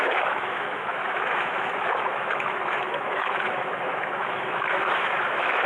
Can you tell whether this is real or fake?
fake